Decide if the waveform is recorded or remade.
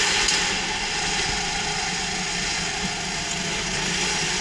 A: recorded